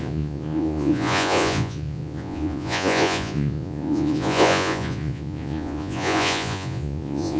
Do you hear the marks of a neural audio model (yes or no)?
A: yes